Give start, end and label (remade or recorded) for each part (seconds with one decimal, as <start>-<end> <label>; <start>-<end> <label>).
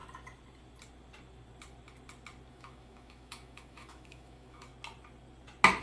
0.0-2.5 recorded; 2.5-4.7 remade; 4.7-5.8 recorded